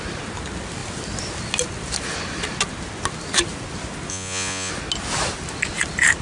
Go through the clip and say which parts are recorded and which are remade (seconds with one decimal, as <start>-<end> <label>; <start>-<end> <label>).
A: 0.0-4.1 recorded; 4.1-4.7 remade; 4.7-6.2 recorded